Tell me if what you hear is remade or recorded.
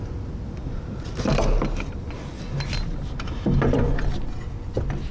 recorded